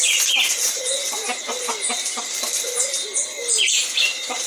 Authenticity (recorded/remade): recorded